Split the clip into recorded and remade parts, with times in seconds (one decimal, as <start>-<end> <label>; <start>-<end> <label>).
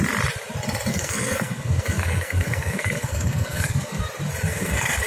0.0-0.9 recorded; 0.9-4.0 remade; 4.0-4.5 recorded; 4.5-5.1 remade